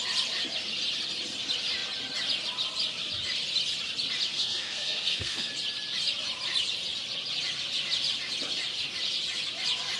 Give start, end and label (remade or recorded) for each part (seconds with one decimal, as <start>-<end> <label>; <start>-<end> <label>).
0.0-4.3 recorded; 4.3-5.5 remade; 5.5-10.0 recorded